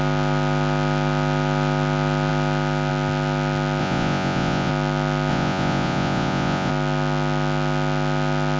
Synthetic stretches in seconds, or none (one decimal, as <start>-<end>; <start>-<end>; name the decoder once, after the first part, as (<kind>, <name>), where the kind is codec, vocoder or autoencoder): 3.8-4.7 (vocoder, Vocos); 5.3-6.7